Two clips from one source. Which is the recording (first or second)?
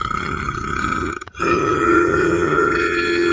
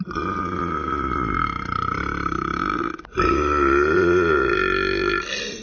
second